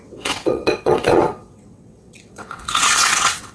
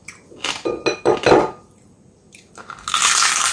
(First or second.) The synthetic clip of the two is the first